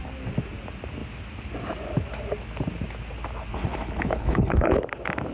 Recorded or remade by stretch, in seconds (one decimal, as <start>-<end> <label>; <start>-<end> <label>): 0.0-3.5 recorded; 3.5-4.7 remade; 4.7-5.3 recorded